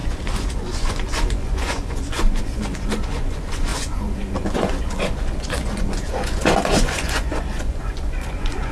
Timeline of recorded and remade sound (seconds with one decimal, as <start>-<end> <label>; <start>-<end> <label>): 0.0-8.7 remade